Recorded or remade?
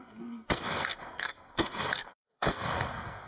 remade